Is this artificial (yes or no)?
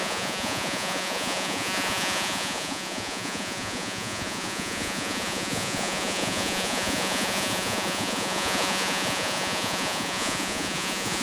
yes